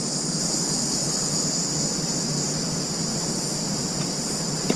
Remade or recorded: remade